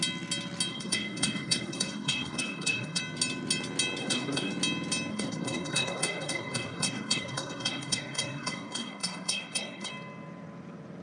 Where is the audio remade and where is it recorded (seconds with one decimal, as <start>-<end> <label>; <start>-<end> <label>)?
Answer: 0.0-0.7 recorded; 0.7-3.0 remade; 3.0-4.0 recorded; 4.0-4.5 remade; 4.5-5.1 recorded; 5.1-9.9 remade; 9.9-11.0 recorded